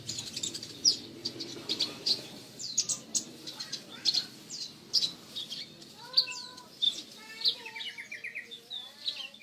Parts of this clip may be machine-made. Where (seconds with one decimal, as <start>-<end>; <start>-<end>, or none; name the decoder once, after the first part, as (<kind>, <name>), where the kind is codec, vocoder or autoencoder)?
0.0-1.2 (vocoder, BigVGAN v2); 1.7-3.1; 4.1-6.8

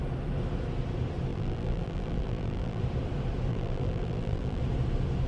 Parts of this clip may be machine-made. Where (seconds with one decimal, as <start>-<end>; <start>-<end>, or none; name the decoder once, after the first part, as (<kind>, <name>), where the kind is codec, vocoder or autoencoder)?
1.3-2.8 (vocoder, BigVGAN v2); 3.5-4.6

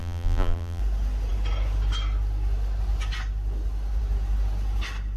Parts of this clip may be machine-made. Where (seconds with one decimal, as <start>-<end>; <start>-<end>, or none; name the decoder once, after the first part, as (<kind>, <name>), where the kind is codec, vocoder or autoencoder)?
0.0-0.8 (vocoder, BigVGAN v2)

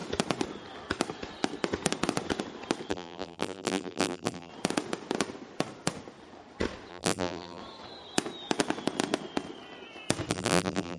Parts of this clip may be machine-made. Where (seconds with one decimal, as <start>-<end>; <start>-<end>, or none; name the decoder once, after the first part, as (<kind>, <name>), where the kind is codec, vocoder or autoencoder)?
2.9-4.5 (vocoder, BigVGAN v2); 6.9-7.6; 10.3-11.0

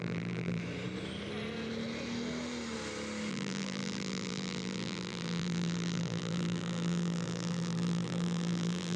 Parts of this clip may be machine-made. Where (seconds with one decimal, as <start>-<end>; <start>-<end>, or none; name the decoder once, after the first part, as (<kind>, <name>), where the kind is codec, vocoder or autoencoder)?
0.0-0.6 (vocoder, BigVGAN v2); 3.3-9.0

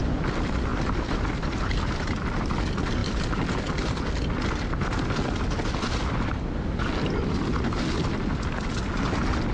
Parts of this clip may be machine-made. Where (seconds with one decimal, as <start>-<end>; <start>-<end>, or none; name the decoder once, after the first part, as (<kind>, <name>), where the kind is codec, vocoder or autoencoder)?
none

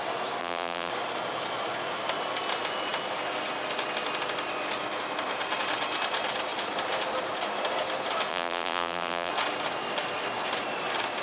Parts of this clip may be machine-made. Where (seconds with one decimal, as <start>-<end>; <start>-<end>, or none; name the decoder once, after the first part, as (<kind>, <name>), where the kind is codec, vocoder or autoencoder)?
0.4-0.9 (vocoder, BigVGAN v2); 8.3-9.3

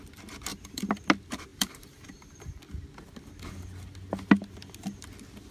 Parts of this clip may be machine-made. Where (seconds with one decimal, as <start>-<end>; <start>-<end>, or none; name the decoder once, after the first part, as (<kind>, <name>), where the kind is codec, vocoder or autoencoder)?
0.5-1.0 (vocoder, BigVGAN v2); 1.5-2.6